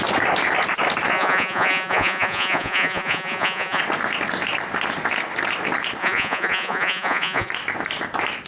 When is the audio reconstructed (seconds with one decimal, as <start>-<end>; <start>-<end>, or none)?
1.1-3.8; 6.0-7.5